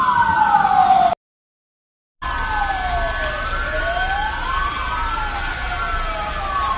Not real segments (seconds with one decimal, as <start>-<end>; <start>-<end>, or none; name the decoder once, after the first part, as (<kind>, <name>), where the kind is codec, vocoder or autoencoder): none